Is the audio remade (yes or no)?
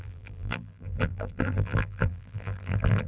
yes